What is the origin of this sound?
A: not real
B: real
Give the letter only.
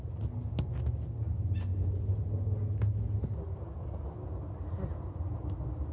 B